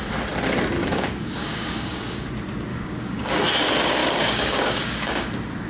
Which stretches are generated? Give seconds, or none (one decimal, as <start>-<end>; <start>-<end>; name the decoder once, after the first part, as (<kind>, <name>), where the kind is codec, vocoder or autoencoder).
0.8-2.3 (codec, DAC); 2.7-3.4; 4.0-5.3